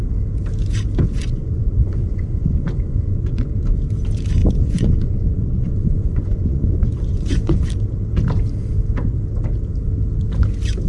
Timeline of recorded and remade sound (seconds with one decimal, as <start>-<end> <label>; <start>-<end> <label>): 0.0-1.2 recorded; 1.2-3.5 remade; 3.5-4.4 recorded; 4.4-7.7 remade; 7.7-10.9 recorded